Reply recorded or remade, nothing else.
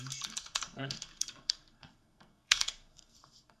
remade